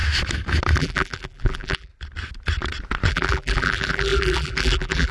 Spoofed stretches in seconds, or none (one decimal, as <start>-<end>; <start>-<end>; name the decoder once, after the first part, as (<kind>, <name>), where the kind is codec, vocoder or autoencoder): 0.8-1.9 (vocoder, BigVGAN v2); 3.1-5.1